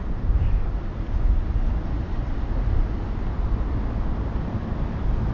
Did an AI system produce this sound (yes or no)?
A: no